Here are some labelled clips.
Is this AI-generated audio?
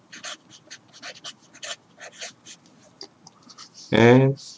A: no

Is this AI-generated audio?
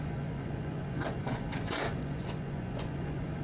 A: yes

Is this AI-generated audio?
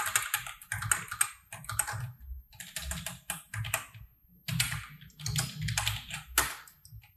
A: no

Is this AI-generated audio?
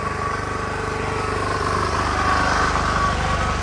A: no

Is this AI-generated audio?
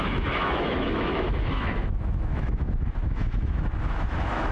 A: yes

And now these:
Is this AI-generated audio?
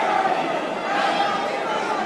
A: no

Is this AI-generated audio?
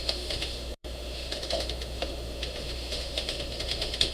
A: yes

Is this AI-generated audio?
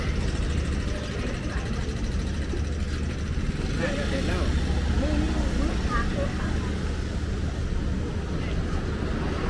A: no